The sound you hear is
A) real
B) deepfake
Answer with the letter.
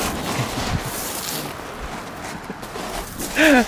A